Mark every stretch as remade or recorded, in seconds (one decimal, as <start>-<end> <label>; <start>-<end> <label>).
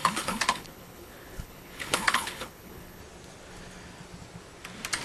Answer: 0.0-3.0 remade; 3.0-5.0 recorded